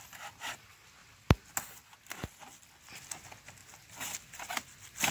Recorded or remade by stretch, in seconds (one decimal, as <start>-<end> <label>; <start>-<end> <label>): 0.0-5.1 recorded